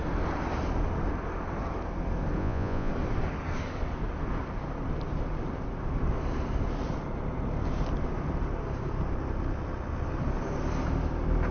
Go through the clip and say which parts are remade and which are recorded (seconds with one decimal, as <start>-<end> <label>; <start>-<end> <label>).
0.0-2.4 recorded; 2.4-2.9 remade; 2.9-11.5 recorded